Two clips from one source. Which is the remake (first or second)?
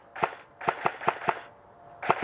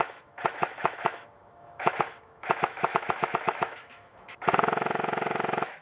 second